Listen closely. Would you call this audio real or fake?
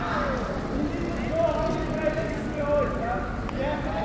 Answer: real